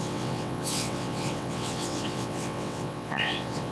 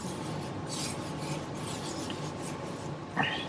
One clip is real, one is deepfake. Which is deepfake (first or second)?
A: first